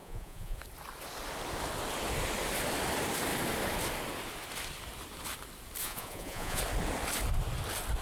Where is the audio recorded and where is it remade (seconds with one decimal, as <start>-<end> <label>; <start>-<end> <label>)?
0.0-0.6 remade; 0.6-5.8 recorded; 5.8-6.6 remade; 6.6-8.0 recorded